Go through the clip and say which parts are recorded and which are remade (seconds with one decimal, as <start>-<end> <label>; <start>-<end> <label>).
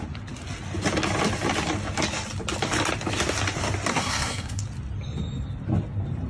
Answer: 0.0-3.9 recorded; 3.9-4.6 remade; 4.6-6.3 recorded